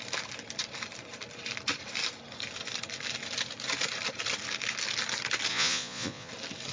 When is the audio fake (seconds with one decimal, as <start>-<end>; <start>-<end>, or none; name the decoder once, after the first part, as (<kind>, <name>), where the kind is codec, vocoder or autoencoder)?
5.5-6.3 (vocoder, Vocos)

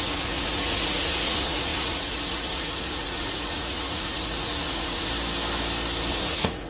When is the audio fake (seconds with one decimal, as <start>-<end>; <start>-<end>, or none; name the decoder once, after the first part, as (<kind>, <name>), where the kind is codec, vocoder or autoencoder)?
0.0-5.1 (vocoder, Vocos); 6.1-6.7

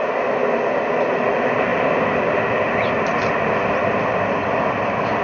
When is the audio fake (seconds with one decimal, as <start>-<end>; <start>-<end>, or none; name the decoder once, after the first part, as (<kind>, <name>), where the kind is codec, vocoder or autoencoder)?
none

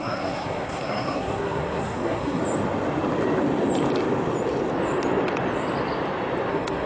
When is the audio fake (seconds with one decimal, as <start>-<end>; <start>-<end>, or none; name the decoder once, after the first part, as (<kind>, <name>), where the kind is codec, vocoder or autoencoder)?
0.0-2.4 (codec, SNAC); 6.5-6.9

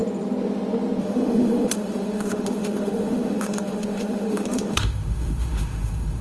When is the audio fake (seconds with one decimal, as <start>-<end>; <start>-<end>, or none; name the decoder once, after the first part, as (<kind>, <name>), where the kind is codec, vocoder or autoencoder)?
1.0-6.2 (autoencoder, DAC-VAE)

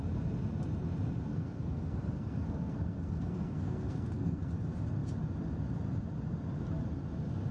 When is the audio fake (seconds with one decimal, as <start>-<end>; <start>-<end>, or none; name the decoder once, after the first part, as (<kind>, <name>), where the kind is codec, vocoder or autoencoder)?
1.3-4.5 (codec, SNAC)